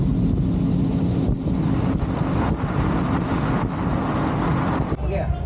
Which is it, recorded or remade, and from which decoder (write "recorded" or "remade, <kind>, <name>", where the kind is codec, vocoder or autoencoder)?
recorded